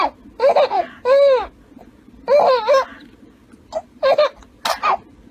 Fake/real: real